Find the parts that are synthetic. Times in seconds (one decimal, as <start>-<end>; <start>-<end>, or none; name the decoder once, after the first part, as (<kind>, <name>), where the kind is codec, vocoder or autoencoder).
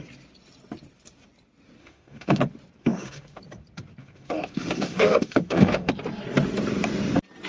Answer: 1.8-2.4 (autoencoder, DAC-VAE); 2.8-3.4; 4.0-5.9